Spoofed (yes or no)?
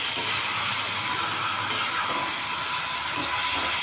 no